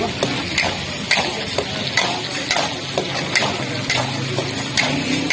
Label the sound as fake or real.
real